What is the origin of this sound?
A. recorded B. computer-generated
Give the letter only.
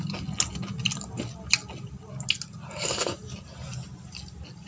A